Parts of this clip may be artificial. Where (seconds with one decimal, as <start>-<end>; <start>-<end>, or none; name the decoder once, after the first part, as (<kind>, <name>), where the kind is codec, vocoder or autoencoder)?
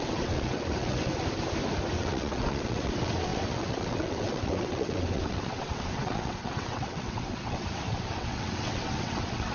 0.0-1.1 (vocoder, WaveNeXt); 1.9-9.5